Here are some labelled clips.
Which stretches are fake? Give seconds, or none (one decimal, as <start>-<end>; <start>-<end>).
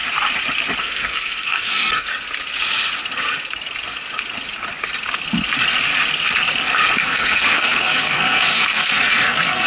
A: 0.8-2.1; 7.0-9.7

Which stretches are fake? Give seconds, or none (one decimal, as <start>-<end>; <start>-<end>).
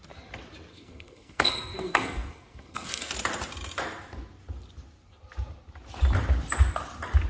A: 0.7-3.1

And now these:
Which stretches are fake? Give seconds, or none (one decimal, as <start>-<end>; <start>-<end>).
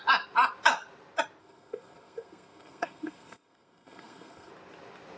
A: 1.4-4.5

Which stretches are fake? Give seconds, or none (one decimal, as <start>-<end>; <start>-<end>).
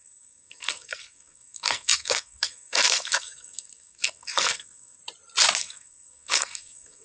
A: 0.0-5.0; 5.6-7.0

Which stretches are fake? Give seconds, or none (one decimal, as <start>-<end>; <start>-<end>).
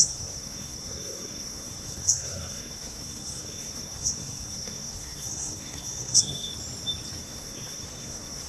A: 0.0-6.5; 7.2-8.5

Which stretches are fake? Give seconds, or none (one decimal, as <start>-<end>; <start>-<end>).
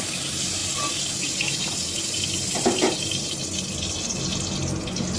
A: none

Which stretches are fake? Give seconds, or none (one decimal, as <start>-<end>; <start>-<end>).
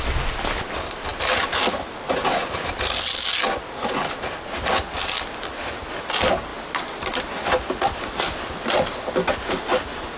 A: none